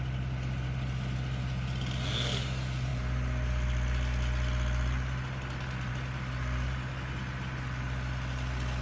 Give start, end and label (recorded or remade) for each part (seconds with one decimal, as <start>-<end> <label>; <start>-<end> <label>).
0.0-8.8 recorded

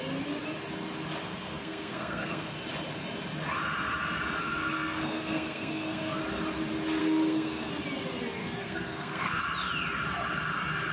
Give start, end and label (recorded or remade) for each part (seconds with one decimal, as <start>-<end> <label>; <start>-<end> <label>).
0.0-1.2 recorded; 1.2-2.6 remade; 2.6-4.4 recorded; 4.4-6.2 remade; 6.2-7.0 recorded; 7.0-7.7 remade; 7.7-8.4 recorded; 8.4-9.4 remade; 9.4-10.9 recorded

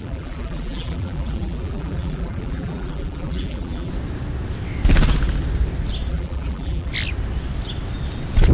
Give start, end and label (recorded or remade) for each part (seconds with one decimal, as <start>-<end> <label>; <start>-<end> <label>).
0.0-3.9 remade; 3.9-6.1 recorded; 6.1-6.9 remade; 6.9-8.5 recorded

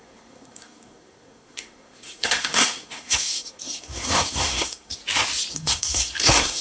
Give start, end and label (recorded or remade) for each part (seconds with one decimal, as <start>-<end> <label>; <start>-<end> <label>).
0.0-5.0 remade; 5.0-5.5 recorded; 5.5-6.6 remade

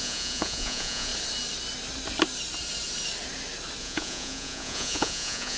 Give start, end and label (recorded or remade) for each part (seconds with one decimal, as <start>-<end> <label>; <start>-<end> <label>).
0.0-1.1 remade; 1.1-3.8 recorded; 3.8-5.6 remade